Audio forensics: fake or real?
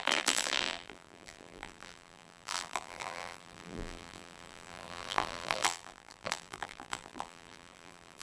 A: fake